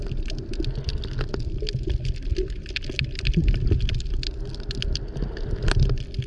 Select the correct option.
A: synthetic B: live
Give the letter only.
B